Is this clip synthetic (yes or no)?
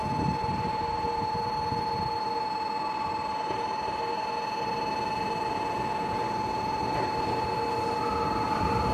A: no